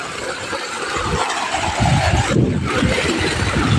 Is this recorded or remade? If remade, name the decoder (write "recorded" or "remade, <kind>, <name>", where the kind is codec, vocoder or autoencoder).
recorded